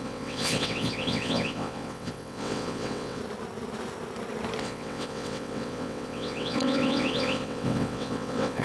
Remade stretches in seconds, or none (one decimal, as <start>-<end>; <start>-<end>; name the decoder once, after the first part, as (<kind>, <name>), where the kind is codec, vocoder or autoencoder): 0.0-3.2 (vocoder, WaveNeXt); 4.6-8.6